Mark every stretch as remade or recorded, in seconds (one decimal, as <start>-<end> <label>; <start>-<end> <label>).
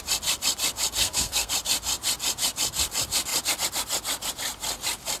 0.0-1.0 recorded; 1.0-1.5 remade; 1.5-5.2 recorded